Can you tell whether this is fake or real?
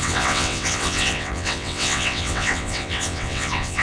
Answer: fake